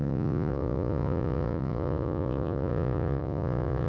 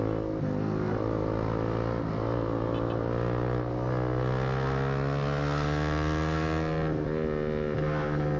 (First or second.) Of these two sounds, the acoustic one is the second